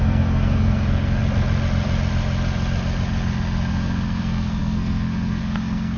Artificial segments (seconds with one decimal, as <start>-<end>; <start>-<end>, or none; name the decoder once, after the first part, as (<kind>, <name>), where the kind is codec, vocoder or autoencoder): 0.0-1.2 (codec, SNAC); 3.7-6.0